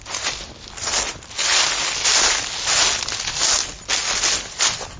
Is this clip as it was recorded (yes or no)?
yes